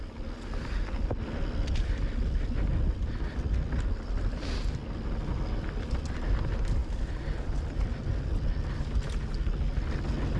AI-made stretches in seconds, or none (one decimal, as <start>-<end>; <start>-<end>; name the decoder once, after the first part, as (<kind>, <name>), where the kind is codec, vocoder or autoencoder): none